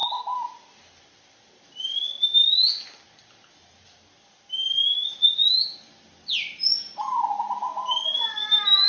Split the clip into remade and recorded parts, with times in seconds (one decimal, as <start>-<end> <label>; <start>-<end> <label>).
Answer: 0.0-8.9 recorded